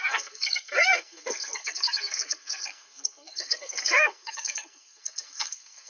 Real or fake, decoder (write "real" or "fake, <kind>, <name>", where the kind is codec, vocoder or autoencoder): fake, codec, SNAC